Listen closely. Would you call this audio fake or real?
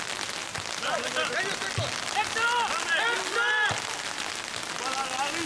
real